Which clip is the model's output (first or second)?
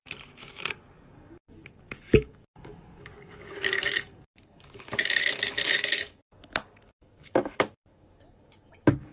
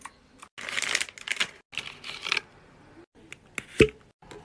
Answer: first